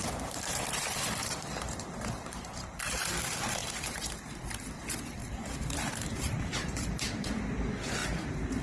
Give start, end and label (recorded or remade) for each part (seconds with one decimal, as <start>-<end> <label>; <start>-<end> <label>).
0.0-3.2 remade; 3.2-3.6 recorded; 3.6-4.4 remade; 4.4-5.2 recorded; 5.2-6.9 remade; 6.9-8.6 recorded